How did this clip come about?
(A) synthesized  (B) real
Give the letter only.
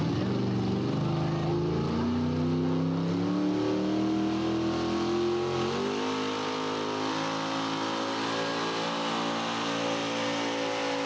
B